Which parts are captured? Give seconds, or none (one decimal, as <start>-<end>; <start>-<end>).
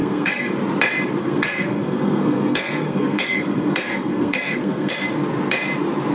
0.5-1.2; 4.9-6.1